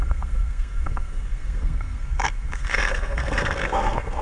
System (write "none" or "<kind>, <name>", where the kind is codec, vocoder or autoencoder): codec, SNAC